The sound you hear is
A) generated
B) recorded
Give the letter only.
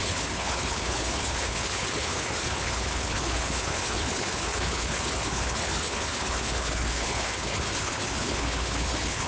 A